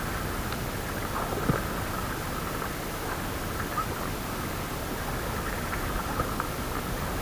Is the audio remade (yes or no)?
no